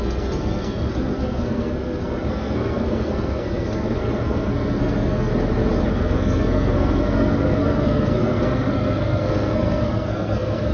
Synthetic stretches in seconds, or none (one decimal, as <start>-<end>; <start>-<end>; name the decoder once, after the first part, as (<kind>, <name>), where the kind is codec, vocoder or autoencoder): 0.0-5.3 (codec, SNAC); 5.9-10.7